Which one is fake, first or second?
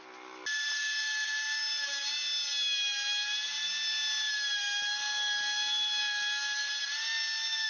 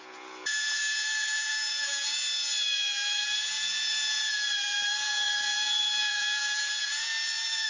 second